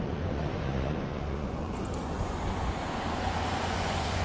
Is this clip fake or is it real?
fake